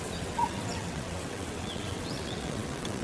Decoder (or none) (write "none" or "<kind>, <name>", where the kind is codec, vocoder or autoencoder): vocoder, WaveNeXt